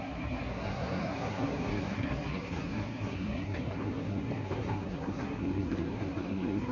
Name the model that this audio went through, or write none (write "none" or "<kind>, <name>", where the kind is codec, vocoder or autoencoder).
codec, SNAC